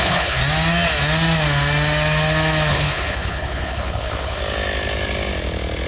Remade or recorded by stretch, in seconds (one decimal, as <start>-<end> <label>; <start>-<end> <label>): 0.0-0.4 remade; 0.4-2.7 recorded; 2.7-4.4 remade; 4.4-5.9 recorded